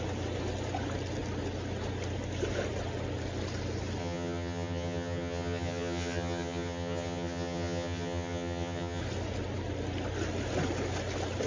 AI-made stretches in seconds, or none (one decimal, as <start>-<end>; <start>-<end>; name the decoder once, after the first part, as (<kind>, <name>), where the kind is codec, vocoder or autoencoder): 4.0-9.0 (vocoder, HiFi-GAN)